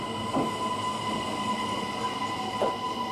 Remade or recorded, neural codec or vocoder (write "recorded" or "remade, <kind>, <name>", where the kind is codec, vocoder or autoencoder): recorded